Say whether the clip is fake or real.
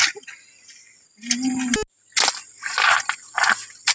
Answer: real